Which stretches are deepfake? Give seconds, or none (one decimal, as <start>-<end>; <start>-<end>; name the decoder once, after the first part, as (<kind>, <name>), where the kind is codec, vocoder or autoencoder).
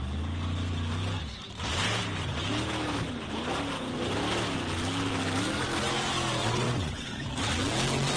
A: 6.4-7.2 (vocoder, WaveNeXt)